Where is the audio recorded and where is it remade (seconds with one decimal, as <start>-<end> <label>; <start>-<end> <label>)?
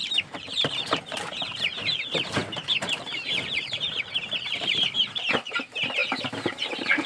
0.0-7.1 remade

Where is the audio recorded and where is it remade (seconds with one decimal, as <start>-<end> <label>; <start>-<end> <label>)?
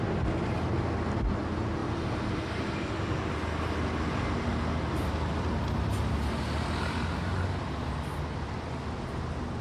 0.0-9.6 recorded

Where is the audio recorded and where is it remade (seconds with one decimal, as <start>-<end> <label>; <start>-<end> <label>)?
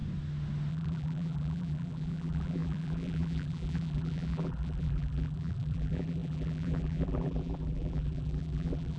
0.0-0.7 recorded; 0.7-9.0 remade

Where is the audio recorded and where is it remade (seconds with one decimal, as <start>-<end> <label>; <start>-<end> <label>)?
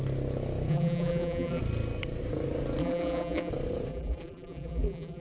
0.0-0.7 recorded; 0.7-1.6 remade; 1.6-2.8 recorded; 2.8-3.5 remade; 3.5-3.9 recorded; 3.9-5.2 remade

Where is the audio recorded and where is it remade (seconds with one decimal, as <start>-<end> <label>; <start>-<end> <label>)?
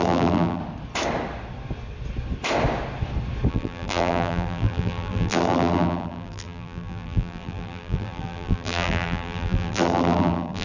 0.0-0.6 remade; 0.6-3.5 recorded; 3.5-10.6 remade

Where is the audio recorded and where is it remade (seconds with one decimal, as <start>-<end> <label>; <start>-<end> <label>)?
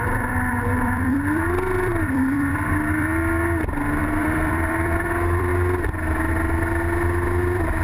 0.0-3.1 remade; 3.1-4.0 recorded; 4.0-5.5 remade; 5.5-6.3 recorded; 6.3-7.8 remade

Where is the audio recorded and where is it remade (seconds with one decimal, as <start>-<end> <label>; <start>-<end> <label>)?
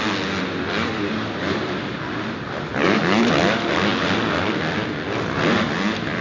0.0-2.7 recorded; 2.7-3.3 remade; 3.3-6.2 recorded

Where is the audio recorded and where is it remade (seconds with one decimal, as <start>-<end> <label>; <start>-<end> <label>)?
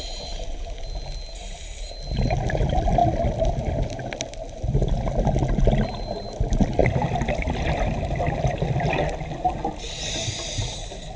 0.0-11.2 recorded